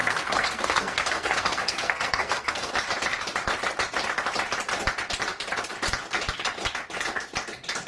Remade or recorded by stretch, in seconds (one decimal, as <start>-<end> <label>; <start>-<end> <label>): 0.0-2.7 remade; 2.7-7.9 recorded